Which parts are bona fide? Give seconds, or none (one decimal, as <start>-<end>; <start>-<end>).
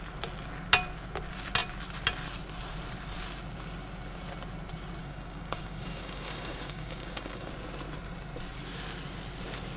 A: 0.0-5.0; 7.5-9.8